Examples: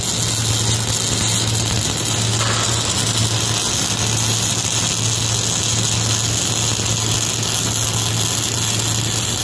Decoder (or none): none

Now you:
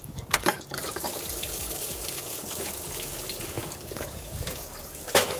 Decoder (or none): codec, DAC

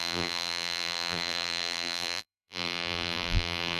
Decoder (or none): vocoder, BigVGAN v2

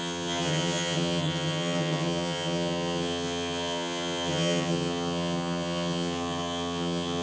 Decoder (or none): vocoder, HiFi-GAN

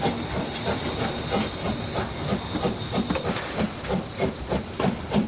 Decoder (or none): none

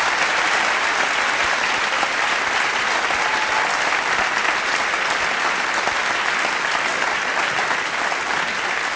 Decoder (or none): none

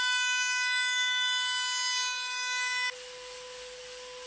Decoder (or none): none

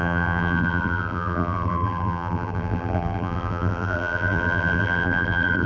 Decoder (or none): vocoder, BigVGAN v2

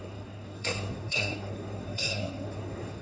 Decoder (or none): codec, SNAC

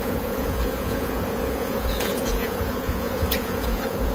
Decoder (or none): vocoder, Vocos